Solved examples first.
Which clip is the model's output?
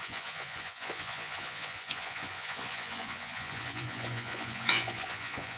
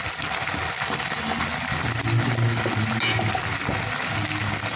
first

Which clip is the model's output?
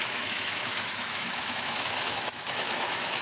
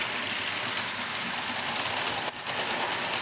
first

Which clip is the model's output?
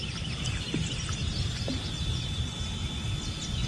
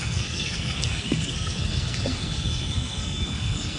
second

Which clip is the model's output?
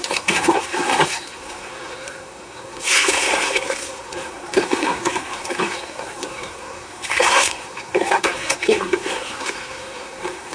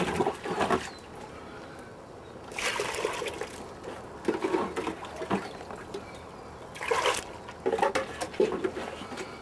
first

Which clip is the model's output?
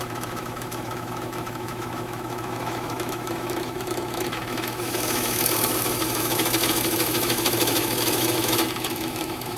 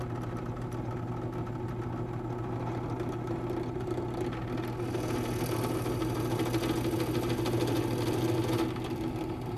first